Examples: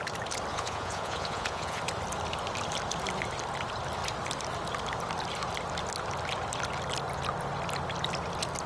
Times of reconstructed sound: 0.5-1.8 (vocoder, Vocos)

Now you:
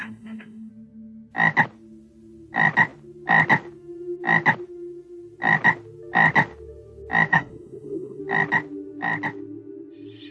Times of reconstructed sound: 0.0-0.7 (codec, SNAC); 7.3-8.2

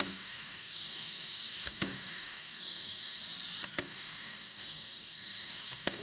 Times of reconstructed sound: 0.0-3.2 (codec, DAC); 3.8-6.0

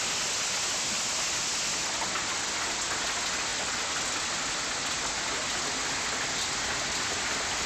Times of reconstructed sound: none

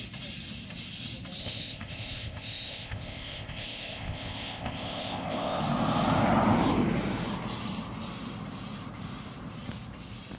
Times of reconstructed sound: 1.4-5.6 (codec, ZipCodec)

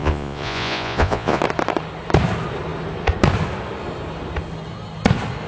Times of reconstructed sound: 0.0-1.4 (vocoder, Vocos)

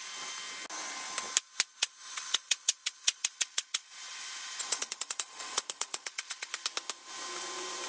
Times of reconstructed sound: 1.8-6.5 (vocoder, Vocos)